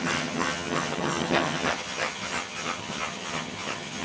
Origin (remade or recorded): remade